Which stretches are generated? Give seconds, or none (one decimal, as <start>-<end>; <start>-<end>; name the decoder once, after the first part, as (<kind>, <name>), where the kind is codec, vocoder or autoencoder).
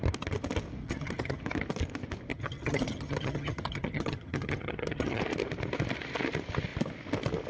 0.8-1.4 (vocoder, HiFi-GAN); 2.3-5.2